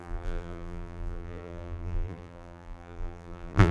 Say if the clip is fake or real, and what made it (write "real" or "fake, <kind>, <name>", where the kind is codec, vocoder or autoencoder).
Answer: fake, vocoder, BigVGAN v2